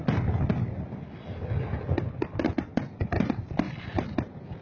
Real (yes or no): yes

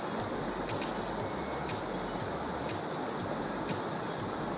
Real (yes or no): yes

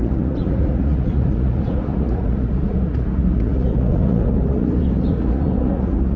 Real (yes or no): no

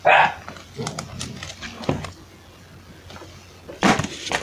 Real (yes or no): yes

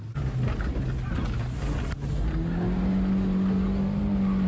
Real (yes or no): yes